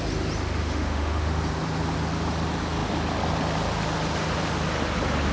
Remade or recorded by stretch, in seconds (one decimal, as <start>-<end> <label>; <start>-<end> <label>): 0.0-0.6 recorded; 0.6-1.4 remade; 1.4-5.3 recorded